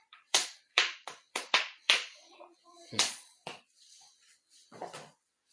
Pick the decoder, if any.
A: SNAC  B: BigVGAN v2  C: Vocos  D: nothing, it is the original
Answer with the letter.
C